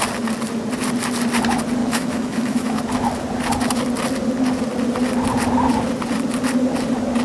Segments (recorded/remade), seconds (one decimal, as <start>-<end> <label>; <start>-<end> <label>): 0.0-1.8 recorded; 1.8-2.8 remade; 2.8-7.2 recorded